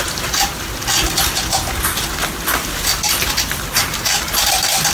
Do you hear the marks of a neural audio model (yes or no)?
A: no